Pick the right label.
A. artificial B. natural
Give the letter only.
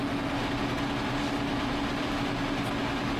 B